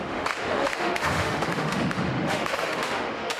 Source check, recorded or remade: remade